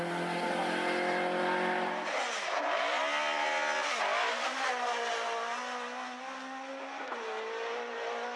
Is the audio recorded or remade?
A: recorded